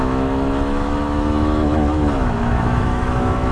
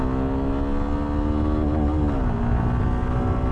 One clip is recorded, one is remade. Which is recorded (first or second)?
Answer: second